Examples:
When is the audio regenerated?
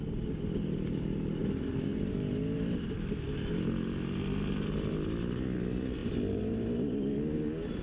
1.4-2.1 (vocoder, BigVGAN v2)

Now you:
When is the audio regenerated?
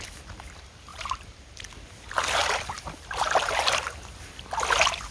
0.9-1.5 (vocoder, BigVGAN v2); 2.4-4.0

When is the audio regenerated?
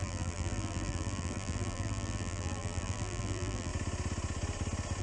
0.0-3.7 (vocoder, BigVGAN v2)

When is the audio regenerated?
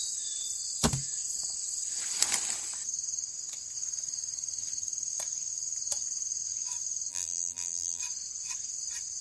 7.1-8.0 (vocoder, BigVGAN v2)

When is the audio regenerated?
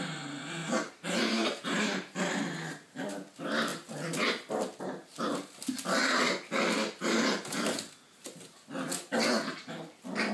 0.6-3.1 (vocoder, BigVGAN v2); 7.0-8.2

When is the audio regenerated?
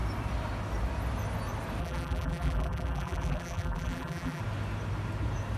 1.8-4.4 (vocoder, BigVGAN v2)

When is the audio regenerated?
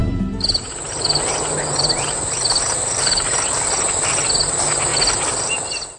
0.0-3.6 (vocoder, BigVGAN v2); 4.9-5.6